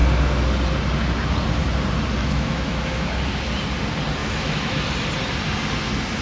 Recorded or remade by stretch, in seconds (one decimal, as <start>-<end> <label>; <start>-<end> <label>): 0.0-2.2 recorded; 2.2-3.2 remade; 3.2-4.2 recorded; 4.2-4.8 remade; 4.8-6.2 recorded